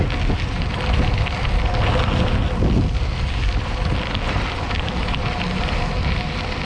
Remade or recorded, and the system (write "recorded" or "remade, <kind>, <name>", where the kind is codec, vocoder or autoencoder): recorded